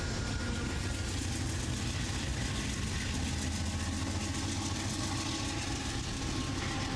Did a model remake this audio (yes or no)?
no